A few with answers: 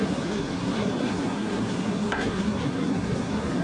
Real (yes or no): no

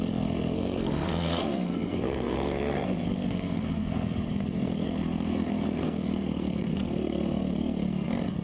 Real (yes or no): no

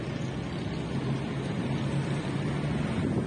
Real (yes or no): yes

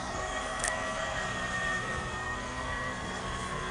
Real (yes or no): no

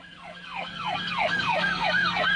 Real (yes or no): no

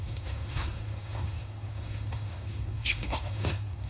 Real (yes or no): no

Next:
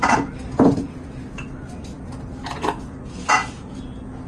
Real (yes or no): yes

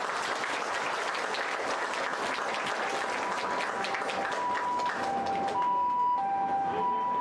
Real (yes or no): yes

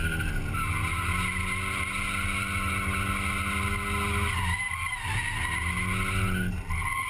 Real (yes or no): yes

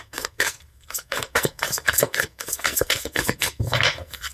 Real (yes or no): no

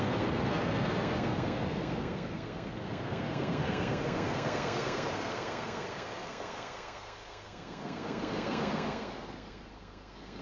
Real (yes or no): no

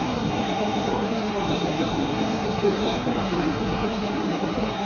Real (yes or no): no